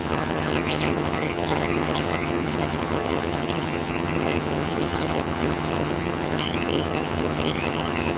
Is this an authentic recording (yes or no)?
no